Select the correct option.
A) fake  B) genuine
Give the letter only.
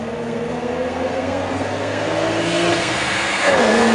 A